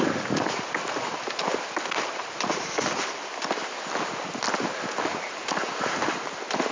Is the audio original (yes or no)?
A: yes